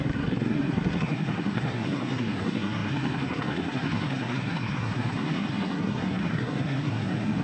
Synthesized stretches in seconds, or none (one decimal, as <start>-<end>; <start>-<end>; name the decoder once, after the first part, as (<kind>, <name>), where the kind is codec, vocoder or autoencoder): 0.0-7.4 (codec, SNAC)